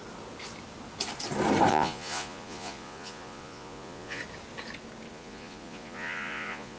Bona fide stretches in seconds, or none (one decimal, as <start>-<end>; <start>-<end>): 0.0-1.7; 4.2-5.1